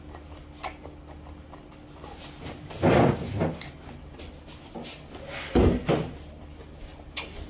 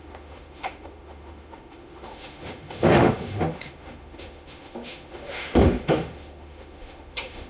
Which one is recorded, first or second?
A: first